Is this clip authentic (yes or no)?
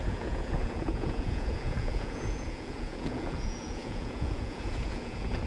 no